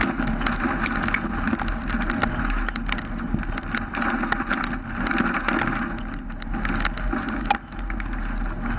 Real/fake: real